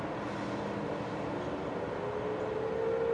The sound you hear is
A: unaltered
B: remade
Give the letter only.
A